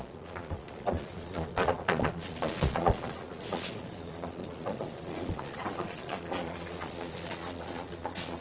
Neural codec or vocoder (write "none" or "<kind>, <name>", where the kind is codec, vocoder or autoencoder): vocoder, Vocos